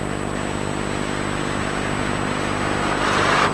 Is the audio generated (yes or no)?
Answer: no